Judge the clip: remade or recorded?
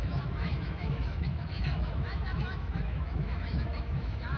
remade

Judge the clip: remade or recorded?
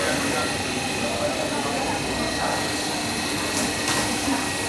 recorded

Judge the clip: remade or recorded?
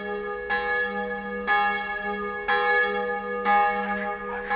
recorded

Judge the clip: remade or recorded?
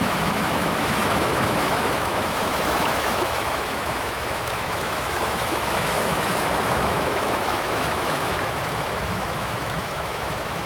remade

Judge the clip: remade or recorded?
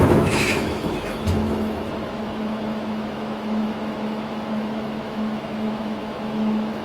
remade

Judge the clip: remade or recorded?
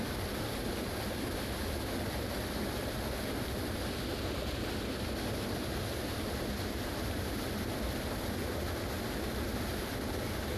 recorded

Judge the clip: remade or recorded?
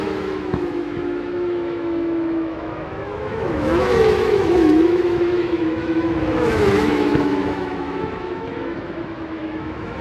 remade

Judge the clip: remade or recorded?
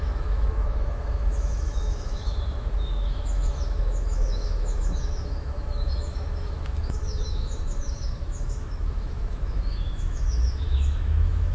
remade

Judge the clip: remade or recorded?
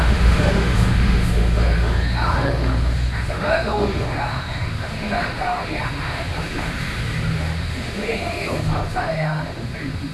remade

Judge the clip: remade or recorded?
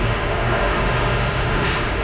remade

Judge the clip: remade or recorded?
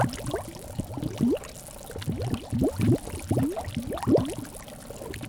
recorded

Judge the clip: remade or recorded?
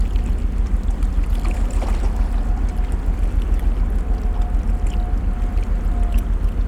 recorded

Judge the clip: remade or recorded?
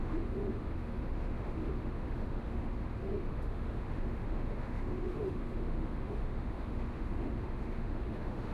remade